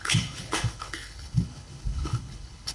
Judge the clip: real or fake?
fake